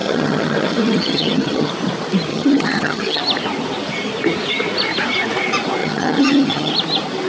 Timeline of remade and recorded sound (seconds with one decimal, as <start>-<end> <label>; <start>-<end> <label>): 0.0-1.7 remade; 1.7-2.3 recorded; 2.3-3.2 remade; 3.2-5.8 recorded; 5.8-6.7 remade; 6.7-7.3 recorded